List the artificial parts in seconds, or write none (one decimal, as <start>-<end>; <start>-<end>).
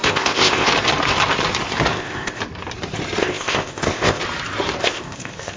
0.0-0.7; 1.9-2.4; 3.2-4.2; 4.8-5.6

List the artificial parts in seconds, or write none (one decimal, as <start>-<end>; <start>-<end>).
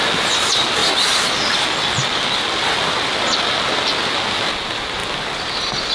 none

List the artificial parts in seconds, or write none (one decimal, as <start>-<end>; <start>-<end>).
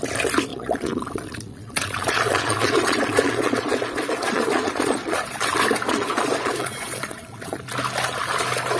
0.5-5.4; 5.9-7.6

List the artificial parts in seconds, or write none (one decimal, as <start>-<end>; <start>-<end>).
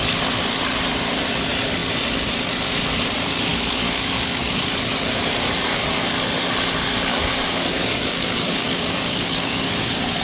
3.5-4.6; 7.1-9.7